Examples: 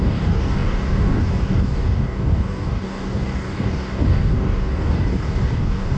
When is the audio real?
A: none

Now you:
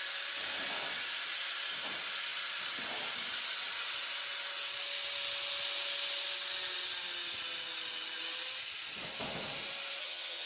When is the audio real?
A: 0.0-10.0

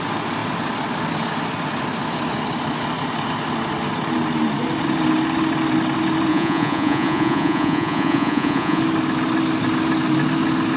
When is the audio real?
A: 0.0-6.3; 8.8-10.8

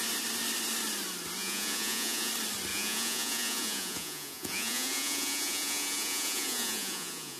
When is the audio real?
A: 0.0-1.4; 2.3-2.7

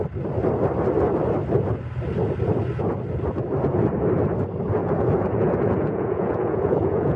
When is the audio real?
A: 0.0-4.8